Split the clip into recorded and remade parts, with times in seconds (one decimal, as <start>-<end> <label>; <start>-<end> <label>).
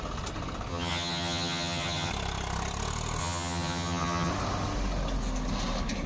0.0-0.7 recorded; 0.7-2.1 remade; 2.1-3.2 recorded; 3.2-4.3 remade; 4.3-6.1 recorded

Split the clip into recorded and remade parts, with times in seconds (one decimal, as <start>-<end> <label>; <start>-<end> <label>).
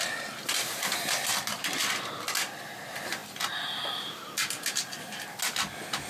0.0-6.1 recorded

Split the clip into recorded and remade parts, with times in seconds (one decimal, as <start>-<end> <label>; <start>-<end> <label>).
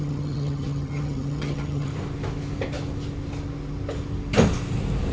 0.0-1.9 remade; 1.9-5.1 recorded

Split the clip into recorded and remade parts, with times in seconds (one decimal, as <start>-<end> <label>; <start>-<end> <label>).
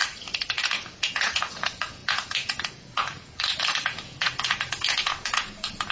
0.0-0.5 recorded; 0.5-5.9 remade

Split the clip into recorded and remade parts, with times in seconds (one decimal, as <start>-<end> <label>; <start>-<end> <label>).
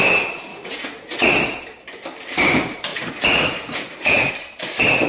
0.0-0.5 recorded; 0.5-1.3 remade; 1.3-2.9 recorded; 2.9-4.3 remade; 4.3-5.1 recorded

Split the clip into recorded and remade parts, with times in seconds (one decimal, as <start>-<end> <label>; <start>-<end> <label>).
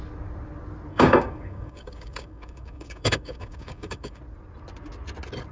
0.0-0.9 recorded; 0.9-4.2 remade; 4.2-5.5 recorded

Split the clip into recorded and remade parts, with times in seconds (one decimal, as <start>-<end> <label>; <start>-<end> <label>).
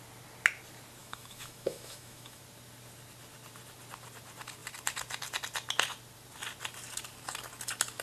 0.0-1.0 recorded; 1.0-2.4 remade; 2.4-8.0 recorded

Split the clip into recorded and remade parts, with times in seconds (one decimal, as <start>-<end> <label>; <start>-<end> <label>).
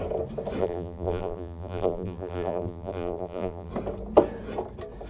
0.0-0.6 recorded; 0.6-3.7 remade; 3.7-5.1 recorded